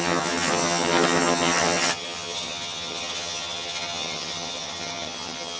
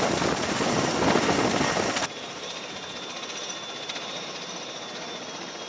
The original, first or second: second